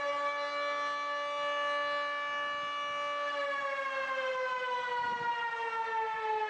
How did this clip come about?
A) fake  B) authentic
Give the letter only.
B